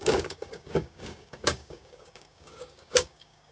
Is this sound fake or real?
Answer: fake